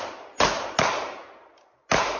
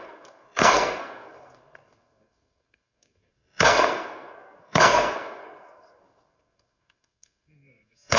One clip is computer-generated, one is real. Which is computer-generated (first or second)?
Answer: second